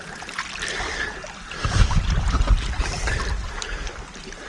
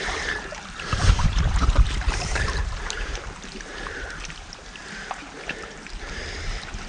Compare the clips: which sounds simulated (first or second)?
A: second